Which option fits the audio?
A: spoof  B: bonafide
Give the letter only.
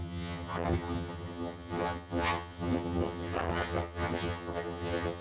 A